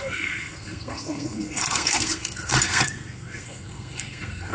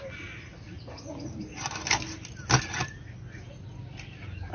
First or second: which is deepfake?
first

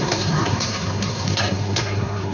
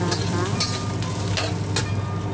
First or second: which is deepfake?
first